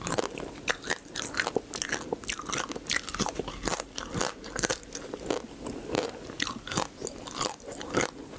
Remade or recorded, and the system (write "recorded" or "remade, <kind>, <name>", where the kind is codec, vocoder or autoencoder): recorded